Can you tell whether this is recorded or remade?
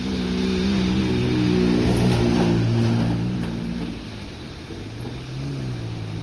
recorded